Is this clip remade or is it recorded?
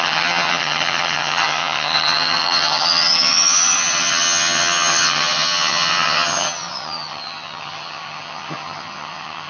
remade